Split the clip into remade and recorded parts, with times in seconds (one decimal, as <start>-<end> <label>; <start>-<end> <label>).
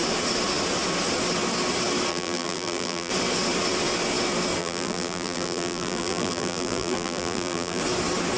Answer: 0.0-2.1 recorded; 2.1-3.1 remade; 3.1-4.6 recorded; 4.6-7.8 remade; 7.8-8.4 recorded